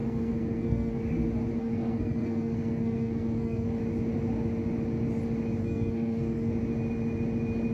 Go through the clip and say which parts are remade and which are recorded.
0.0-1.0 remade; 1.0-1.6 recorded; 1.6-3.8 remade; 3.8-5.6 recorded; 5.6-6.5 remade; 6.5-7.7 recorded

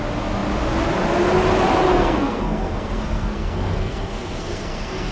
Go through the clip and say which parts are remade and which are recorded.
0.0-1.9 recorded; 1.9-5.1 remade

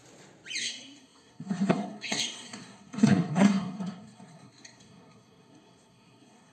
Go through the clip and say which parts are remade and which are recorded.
0.0-0.6 recorded; 0.6-6.5 remade